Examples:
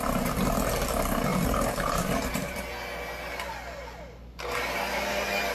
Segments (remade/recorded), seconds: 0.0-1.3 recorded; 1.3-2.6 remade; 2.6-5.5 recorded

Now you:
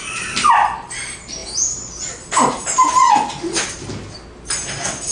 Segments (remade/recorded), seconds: 0.0-5.1 recorded

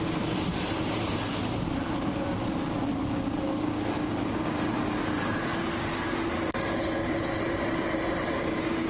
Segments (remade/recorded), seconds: 0.0-2.9 remade; 2.9-5.0 recorded; 5.0-8.9 remade

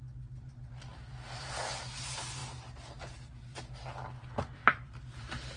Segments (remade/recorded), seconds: 0.0-0.9 recorded; 0.9-1.8 remade; 1.8-4.6 recorded; 4.6-5.6 remade

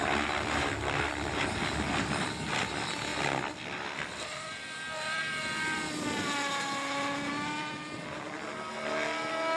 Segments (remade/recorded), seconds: 0.0-9.6 recorded

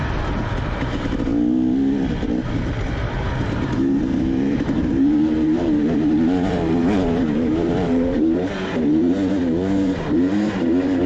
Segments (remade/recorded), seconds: 0.0-1.3 remade; 1.3-3.4 recorded; 3.4-11.1 remade